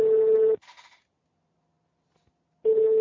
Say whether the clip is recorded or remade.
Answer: recorded